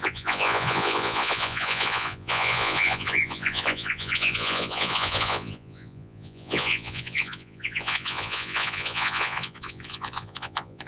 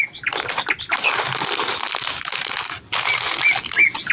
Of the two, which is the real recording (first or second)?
second